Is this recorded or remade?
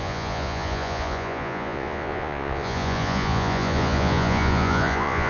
remade